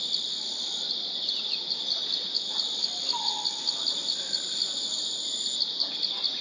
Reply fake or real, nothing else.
real